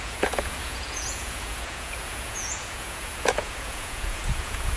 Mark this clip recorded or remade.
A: remade